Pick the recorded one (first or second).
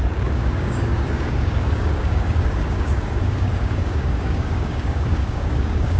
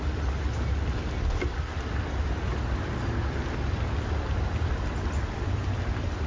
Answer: second